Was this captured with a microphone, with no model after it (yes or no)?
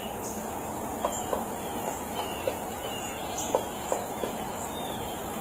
no